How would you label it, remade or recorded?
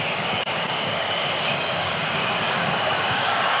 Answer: remade